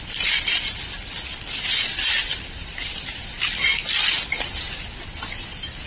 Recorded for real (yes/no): yes